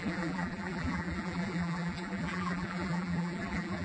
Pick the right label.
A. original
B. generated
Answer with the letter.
B